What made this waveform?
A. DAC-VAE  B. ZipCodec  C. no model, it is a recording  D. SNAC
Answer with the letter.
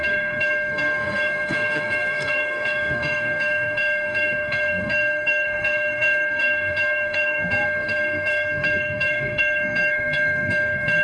D